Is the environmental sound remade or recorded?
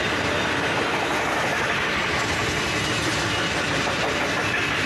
recorded